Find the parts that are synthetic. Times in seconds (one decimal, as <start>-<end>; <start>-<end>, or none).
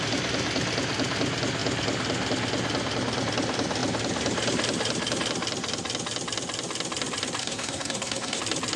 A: 7.4-8.4